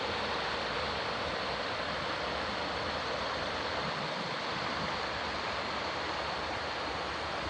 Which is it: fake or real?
real